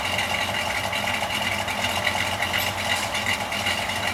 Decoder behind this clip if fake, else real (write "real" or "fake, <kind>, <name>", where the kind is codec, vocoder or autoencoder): fake, vocoder, BigVGAN v2